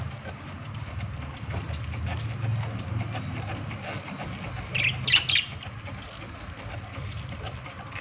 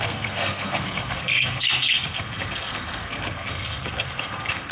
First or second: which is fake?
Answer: second